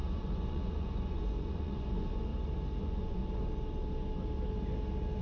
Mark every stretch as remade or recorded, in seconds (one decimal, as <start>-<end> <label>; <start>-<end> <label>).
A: 0.0-2.3 remade; 2.3-2.8 recorded; 2.8-3.2 remade; 3.2-5.2 recorded